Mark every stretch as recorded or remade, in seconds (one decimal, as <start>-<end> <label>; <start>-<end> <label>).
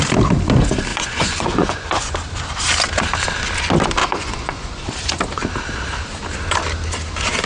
0.0-0.9 recorded; 0.9-2.1 remade; 2.1-4.0 recorded; 4.0-4.9 remade; 4.9-7.5 recorded